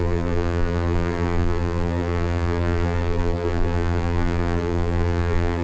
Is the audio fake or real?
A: fake